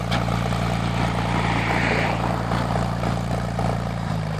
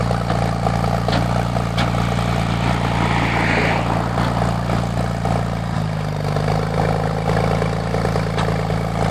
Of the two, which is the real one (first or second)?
second